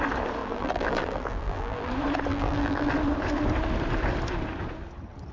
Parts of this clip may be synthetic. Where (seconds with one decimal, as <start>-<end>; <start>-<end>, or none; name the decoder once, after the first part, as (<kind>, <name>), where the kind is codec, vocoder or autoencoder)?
0.4-1.9 (vocoder, BigVGAN v2); 2.3-2.9